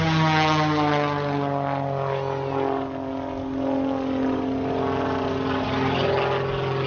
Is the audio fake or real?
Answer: real